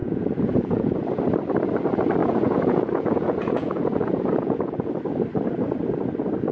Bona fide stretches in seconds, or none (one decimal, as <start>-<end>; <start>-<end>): 0.8-2.2; 4.9-6.5